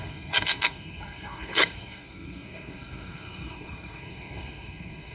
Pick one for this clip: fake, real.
fake